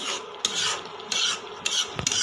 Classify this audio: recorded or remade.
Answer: recorded